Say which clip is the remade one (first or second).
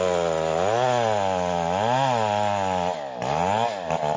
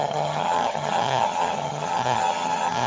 second